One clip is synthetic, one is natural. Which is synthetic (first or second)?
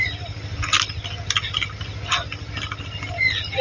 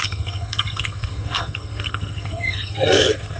second